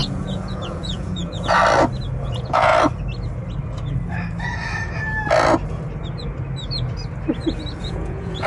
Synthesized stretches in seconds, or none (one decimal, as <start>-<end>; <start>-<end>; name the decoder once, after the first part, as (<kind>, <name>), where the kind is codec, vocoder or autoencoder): 0.0-1.6 (vocoder, Vocos); 2.2-2.7; 7.8-8.5